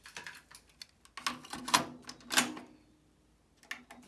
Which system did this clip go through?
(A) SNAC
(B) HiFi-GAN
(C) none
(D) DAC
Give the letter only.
C